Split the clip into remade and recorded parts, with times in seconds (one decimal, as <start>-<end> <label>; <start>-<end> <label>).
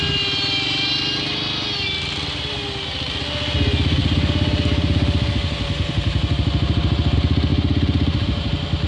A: 0.0-4.0 recorded; 4.0-5.9 remade; 5.9-7.5 recorded; 7.5-8.5 remade; 8.5-8.9 recorded